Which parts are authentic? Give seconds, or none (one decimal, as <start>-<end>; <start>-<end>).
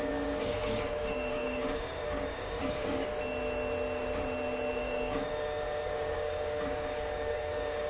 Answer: 3.0-4.8